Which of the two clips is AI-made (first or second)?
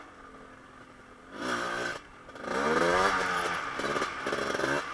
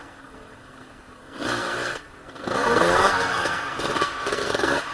second